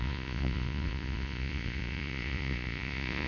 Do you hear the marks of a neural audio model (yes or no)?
yes